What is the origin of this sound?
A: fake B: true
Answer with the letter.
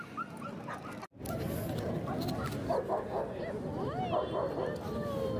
B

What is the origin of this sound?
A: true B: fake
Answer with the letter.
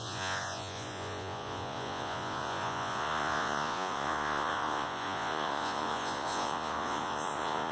B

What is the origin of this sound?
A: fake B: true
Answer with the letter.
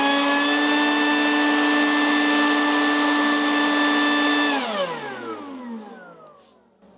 B